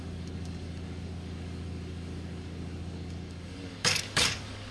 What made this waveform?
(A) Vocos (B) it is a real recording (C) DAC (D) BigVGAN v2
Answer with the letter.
C